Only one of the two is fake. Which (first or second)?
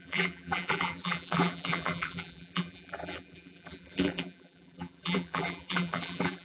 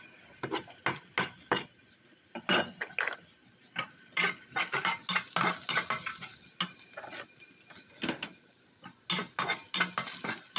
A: first